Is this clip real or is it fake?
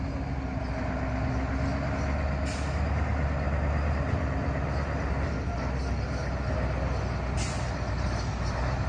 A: real